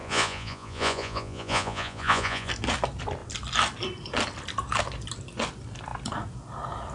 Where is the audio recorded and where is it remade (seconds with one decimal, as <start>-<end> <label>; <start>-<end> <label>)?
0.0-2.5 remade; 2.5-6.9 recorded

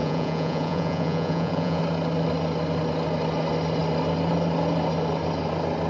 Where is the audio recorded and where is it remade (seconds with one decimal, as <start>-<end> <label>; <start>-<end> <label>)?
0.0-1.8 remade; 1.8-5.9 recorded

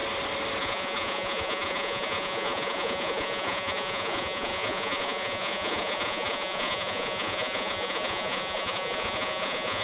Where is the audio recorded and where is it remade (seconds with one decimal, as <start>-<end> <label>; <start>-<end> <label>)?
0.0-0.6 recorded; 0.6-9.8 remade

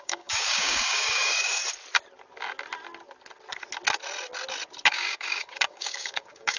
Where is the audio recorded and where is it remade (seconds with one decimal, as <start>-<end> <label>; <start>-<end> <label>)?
0.0-1.6 remade; 1.6-4.9 recorded; 4.9-6.6 remade